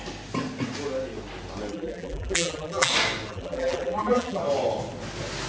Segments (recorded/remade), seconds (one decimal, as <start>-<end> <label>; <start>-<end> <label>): 0.0-1.7 recorded; 1.7-2.9 remade; 2.9-3.3 recorded; 3.3-4.4 remade; 4.4-5.5 recorded